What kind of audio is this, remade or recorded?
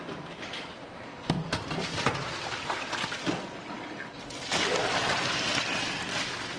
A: recorded